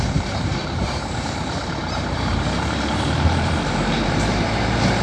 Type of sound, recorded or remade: remade